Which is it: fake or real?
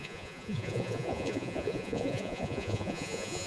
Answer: fake